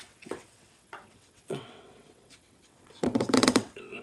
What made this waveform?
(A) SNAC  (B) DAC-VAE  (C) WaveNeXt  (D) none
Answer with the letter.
C